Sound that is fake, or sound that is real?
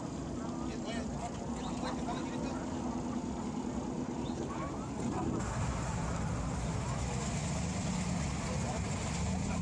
real